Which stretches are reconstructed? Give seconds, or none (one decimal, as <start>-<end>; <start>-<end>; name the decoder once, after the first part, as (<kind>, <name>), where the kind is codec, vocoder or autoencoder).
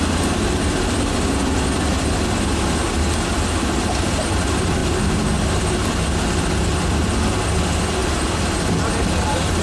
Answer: 4.8-5.3 (vocoder, BigVGAN v2)